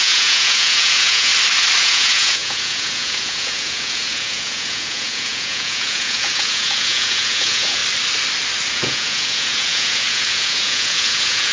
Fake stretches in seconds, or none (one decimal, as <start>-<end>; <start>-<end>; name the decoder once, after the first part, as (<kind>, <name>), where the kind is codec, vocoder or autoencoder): 0.0-1.3 (vocoder, Vocos); 1.8-7.8; 8.7-11.5